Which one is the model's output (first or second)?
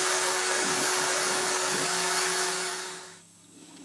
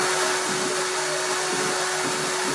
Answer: first